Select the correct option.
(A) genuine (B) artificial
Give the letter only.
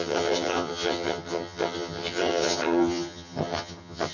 B